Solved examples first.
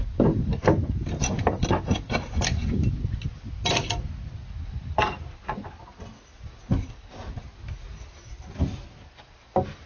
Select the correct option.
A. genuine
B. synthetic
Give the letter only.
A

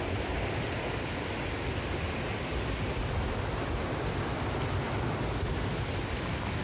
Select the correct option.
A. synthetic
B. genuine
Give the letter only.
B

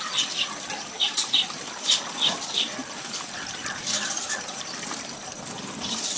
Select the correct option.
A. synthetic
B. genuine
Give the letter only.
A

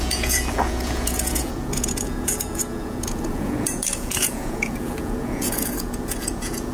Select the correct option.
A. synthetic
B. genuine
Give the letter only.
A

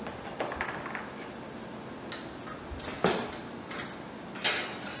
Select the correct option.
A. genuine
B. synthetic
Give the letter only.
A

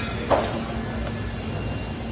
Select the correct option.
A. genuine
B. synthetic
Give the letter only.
A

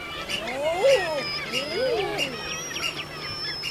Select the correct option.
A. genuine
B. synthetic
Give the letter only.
B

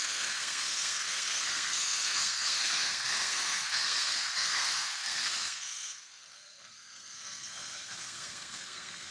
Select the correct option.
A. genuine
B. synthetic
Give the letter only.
B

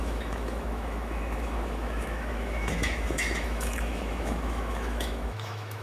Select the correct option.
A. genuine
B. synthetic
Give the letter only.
B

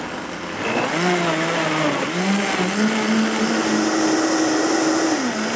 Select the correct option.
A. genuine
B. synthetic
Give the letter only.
A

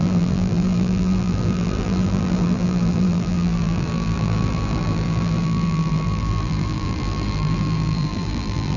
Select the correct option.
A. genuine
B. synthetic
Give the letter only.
B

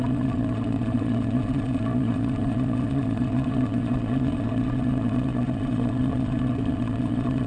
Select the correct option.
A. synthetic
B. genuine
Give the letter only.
A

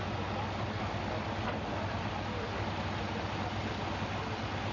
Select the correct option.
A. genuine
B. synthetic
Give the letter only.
A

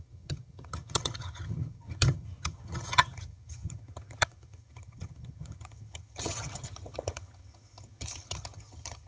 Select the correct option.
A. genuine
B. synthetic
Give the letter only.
B